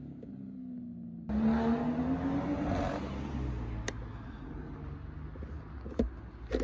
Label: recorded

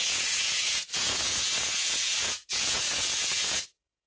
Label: remade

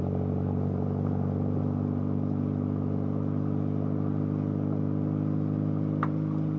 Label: recorded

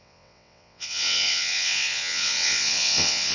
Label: remade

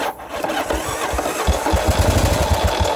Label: recorded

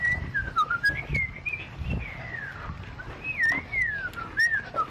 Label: recorded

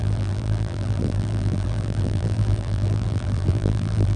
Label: remade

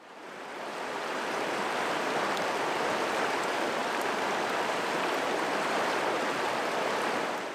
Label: remade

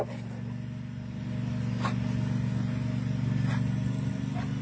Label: recorded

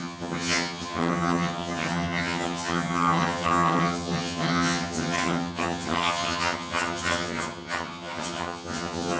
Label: remade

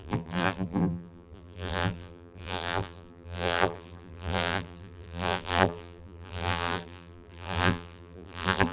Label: remade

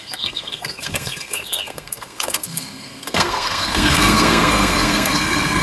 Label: remade